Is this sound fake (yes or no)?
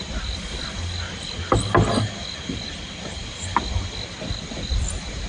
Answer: no